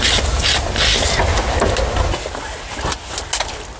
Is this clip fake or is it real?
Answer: real